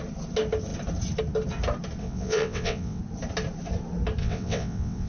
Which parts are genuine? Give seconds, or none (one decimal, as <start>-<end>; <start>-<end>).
0.0-2.0; 3.0-4.2